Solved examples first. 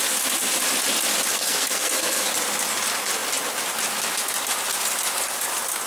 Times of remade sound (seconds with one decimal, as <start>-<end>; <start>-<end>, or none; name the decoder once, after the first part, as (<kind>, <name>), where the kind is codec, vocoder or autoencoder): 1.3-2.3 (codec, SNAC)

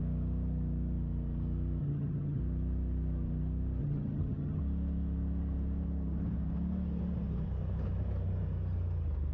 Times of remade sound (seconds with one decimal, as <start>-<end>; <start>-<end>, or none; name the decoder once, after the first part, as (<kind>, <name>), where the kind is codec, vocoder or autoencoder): 1.8-2.4 (vocoder, HiFi-GAN); 3.8-4.6

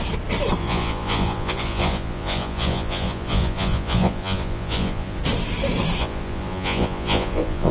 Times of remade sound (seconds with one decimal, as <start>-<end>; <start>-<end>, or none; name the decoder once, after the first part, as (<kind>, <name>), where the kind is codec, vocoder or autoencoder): 0.6-5.2 (vocoder, Vocos); 6.0-7.7

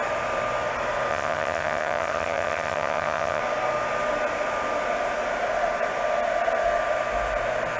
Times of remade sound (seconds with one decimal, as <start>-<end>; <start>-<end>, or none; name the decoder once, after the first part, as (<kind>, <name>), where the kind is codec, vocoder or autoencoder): 1.1-3.4 (vocoder, HiFi-GAN)